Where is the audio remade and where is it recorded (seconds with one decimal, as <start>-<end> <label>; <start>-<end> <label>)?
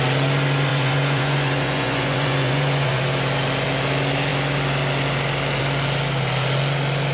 0.0-0.7 recorded; 0.7-3.0 remade; 3.0-7.1 recorded